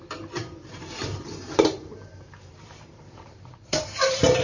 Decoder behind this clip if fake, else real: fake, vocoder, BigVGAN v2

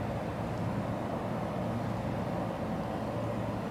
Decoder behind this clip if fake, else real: real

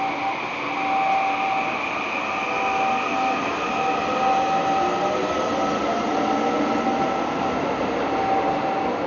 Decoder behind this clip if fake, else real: real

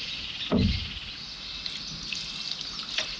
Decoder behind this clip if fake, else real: real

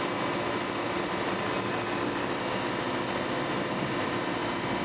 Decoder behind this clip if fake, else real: real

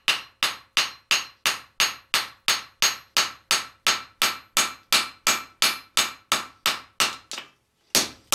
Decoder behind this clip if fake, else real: real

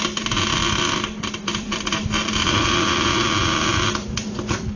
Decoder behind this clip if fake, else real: fake, vocoder, BigVGAN v2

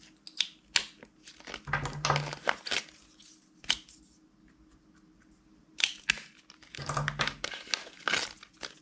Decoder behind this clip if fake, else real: real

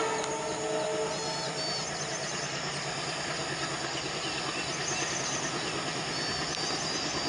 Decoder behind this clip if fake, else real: real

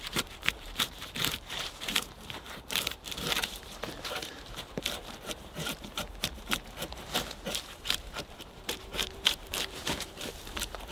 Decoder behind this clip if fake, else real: fake, vocoder, BigVGAN v2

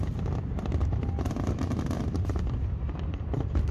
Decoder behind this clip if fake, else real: fake, vocoder, BigVGAN v2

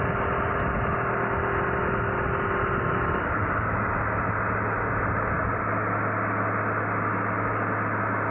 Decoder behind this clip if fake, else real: fake, vocoder, BigVGAN v2